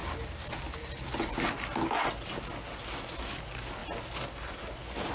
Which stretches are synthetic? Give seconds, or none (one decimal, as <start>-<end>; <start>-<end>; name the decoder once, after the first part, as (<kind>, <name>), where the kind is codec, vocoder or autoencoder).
none